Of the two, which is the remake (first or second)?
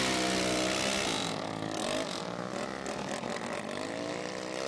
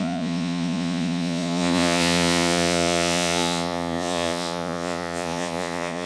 second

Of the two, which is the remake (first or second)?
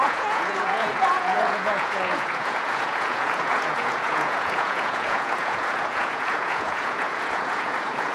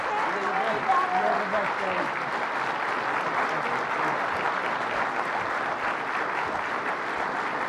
first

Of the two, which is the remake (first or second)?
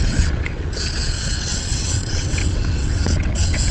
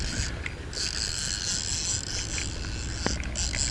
first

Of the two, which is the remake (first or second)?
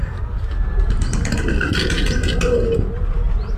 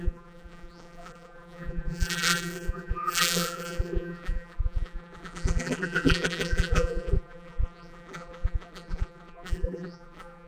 second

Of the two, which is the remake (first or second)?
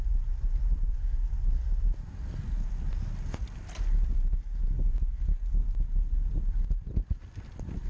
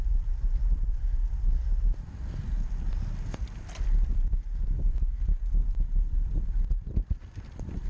second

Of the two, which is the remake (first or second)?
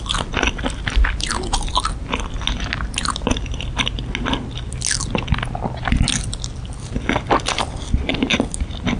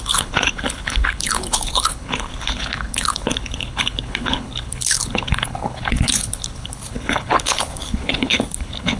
second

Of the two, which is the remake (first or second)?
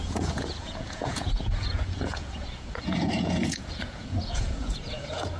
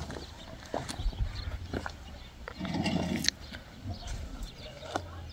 first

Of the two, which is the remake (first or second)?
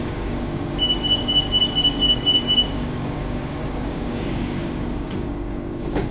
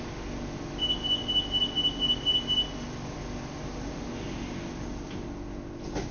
first